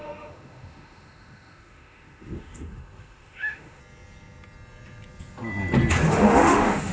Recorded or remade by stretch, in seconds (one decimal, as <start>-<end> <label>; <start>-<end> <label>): 0.0-3.8 remade; 3.8-6.1 recorded; 6.1-6.9 remade